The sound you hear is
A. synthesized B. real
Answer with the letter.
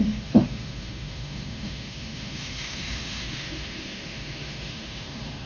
A